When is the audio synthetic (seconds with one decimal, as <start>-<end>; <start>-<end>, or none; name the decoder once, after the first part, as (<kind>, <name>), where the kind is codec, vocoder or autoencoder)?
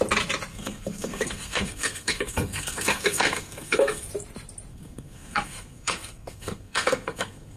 0.5-4.1 (codec, SNAC); 4.7-7.6